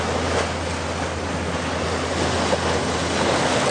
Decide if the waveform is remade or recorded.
recorded